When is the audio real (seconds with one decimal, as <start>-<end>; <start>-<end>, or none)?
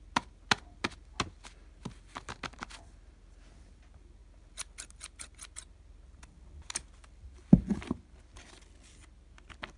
0.0-9.8